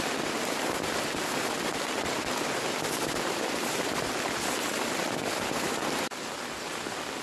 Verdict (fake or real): real